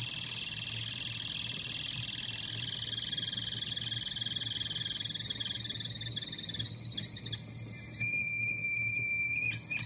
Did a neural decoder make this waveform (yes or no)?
no